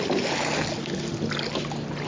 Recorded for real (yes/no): yes